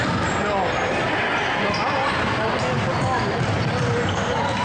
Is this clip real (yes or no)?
yes